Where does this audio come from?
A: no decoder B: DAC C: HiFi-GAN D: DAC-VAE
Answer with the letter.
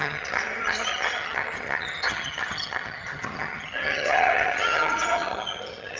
C